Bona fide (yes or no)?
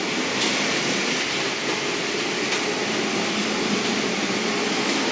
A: yes